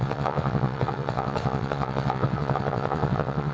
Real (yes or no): no